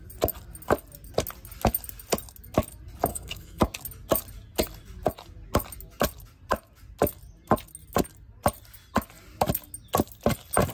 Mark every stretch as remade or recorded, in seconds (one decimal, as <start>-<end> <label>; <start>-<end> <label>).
0.0-3.1 recorded; 3.1-3.6 remade; 3.6-10.7 recorded